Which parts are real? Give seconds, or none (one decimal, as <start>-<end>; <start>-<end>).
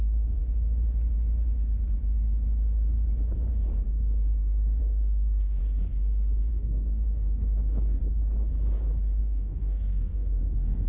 0.4-4.8; 5.6-6.5; 7.6-9.2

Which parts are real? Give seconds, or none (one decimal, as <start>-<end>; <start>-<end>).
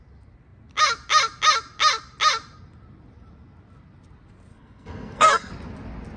0.0-4.5; 5.5-6.2